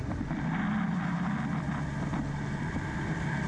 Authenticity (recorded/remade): recorded